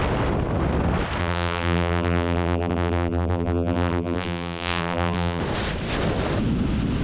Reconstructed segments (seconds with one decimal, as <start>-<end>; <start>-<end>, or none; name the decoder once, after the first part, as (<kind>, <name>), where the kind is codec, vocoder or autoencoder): 1.2-5.4 (vocoder, BigVGAN v2)

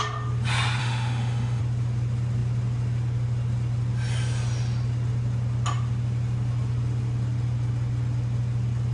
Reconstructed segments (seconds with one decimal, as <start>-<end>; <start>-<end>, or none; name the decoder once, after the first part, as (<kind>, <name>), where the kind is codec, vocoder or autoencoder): 0.8-1.6 (autoencoder, DAC-VAE)

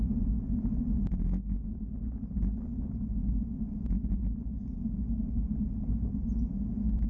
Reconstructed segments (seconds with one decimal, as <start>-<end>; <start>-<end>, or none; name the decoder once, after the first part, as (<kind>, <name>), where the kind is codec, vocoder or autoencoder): none